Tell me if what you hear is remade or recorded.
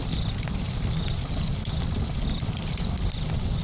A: recorded